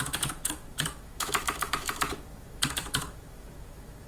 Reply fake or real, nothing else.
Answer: fake